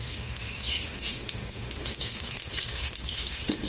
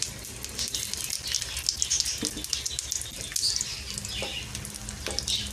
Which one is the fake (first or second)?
first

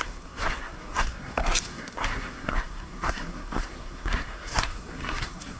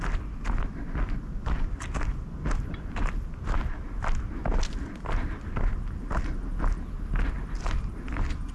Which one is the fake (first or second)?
first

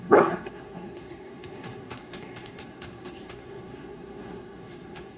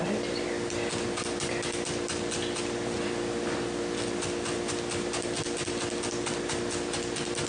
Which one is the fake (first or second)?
first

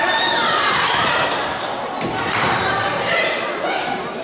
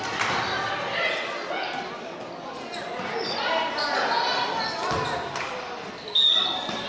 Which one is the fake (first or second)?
first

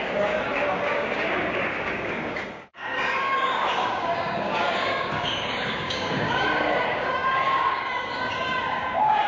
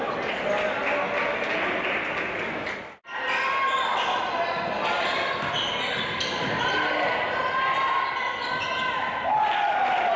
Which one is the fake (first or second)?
first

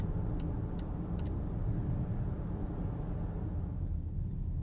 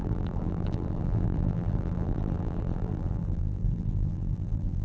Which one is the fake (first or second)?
second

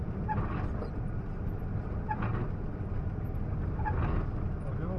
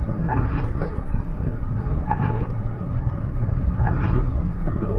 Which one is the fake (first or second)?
second